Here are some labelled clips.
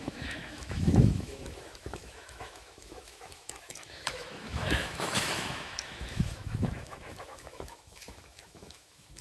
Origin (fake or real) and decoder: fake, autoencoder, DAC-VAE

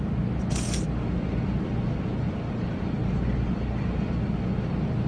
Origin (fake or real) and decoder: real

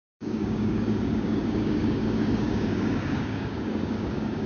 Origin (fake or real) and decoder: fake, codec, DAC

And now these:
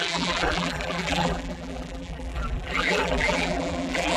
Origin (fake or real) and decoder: fake, vocoder, BigVGAN v2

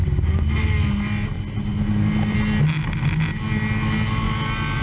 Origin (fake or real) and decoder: real